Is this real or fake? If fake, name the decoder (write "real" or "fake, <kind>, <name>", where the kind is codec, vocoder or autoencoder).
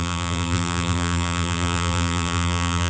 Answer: fake, vocoder, BigVGAN v2